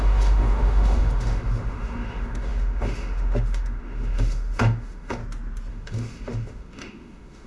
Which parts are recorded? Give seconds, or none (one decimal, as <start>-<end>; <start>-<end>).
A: 5.2-5.7

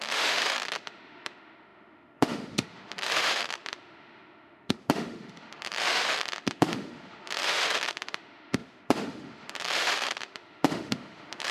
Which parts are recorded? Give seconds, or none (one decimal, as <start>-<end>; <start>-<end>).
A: none

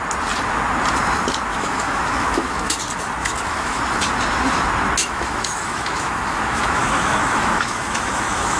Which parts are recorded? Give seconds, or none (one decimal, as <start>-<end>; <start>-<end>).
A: 0.0-1.5; 2.8-3.2; 3.8-5.0

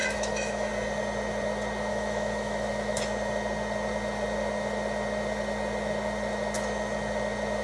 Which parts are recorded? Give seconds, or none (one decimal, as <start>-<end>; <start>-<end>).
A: 0.7-1.9; 3.0-7.6

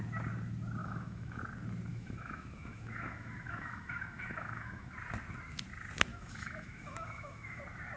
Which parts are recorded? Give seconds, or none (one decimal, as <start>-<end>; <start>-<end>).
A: 0.0-0.8; 1.4-1.9; 4.9-6.1; 7.6-8.0

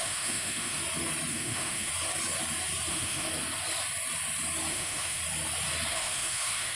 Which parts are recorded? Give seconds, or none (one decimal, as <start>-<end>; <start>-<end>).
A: 0.8-1.3; 1.9-2.9; 3.3-4.7; 5.2-5.9